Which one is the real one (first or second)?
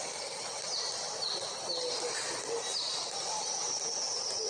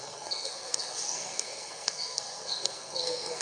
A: first